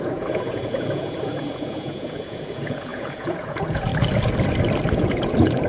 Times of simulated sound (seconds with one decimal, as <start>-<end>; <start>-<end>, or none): 0.0-3.9; 4.9-5.7